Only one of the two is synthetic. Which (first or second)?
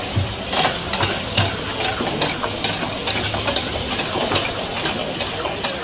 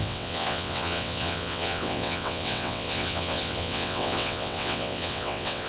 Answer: second